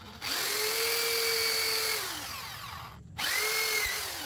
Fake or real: real